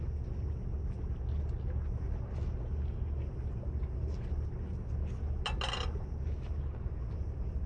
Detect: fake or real real